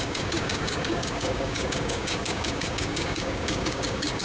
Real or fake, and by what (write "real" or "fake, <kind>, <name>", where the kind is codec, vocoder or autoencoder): fake, codec, DAC